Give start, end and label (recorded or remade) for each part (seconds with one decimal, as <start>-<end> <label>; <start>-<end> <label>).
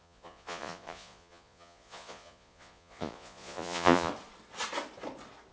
0.0-4.1 remade; 4.1-5.5 recorded